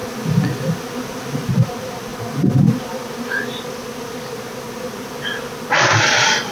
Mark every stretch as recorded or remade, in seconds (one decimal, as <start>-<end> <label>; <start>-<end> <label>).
0.0-1.5 recorded; 1.5-2.1 remade; 2.1-6.0 recorded; 6.0-6.5 remade